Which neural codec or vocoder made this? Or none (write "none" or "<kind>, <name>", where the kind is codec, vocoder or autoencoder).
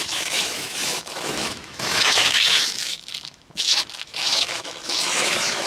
autoencoder, DAC-VAE